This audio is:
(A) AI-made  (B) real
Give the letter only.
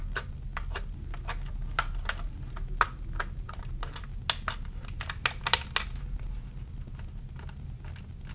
B